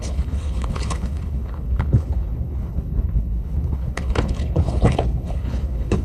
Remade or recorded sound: remade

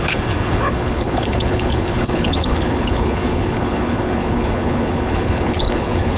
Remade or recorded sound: remade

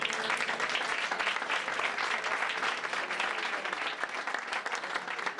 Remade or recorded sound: recorded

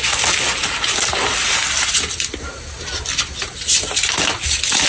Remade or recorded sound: recorded